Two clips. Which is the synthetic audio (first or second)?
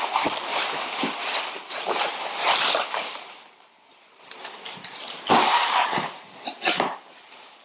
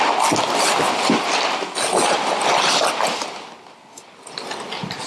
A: first